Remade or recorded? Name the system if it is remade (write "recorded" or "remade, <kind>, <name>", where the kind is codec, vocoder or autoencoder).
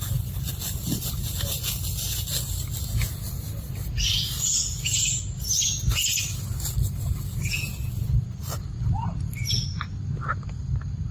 recorded